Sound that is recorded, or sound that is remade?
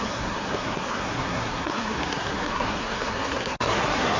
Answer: remade